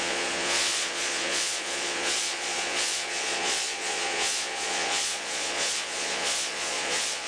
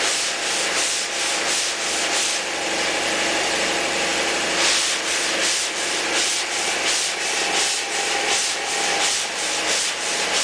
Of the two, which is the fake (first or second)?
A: first